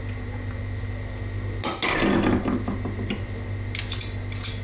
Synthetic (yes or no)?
no